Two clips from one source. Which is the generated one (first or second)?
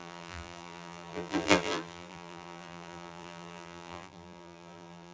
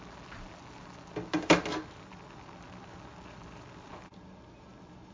first